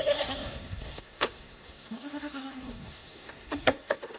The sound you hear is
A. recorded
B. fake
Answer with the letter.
B